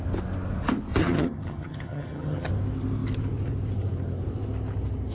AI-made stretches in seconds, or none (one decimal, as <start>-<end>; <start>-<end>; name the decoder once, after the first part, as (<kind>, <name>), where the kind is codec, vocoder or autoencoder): 1.0-2.5 (vocoder, HiFi-GAN)